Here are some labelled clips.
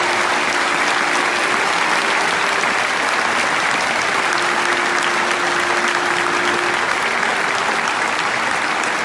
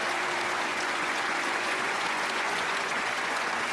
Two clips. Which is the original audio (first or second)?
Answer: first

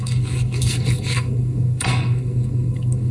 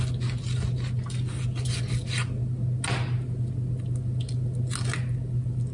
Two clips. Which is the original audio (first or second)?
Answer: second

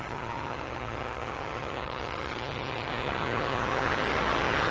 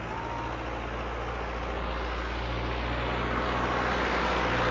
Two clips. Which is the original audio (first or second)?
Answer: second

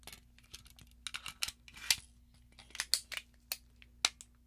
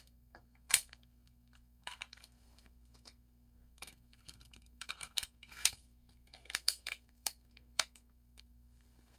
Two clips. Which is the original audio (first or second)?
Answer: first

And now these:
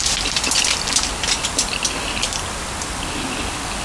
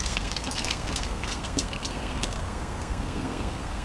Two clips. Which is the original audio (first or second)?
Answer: first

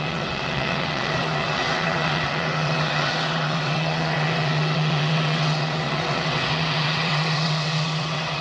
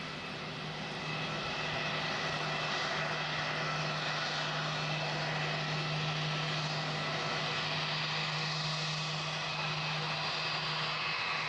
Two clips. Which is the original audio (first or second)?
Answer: second